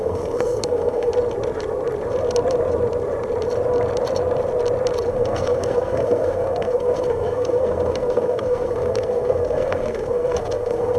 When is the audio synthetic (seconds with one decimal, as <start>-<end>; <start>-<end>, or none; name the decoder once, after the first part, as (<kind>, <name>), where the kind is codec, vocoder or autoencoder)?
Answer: 0.0-1.1 (codec, SNAC); 5.1-11.0